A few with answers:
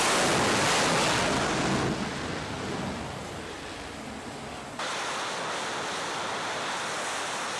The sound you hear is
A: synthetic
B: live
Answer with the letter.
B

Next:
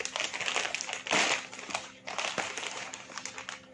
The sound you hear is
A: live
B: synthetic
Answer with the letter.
A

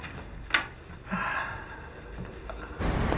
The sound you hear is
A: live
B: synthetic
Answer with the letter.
A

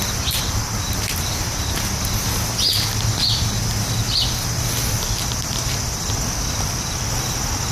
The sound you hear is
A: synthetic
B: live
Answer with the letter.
B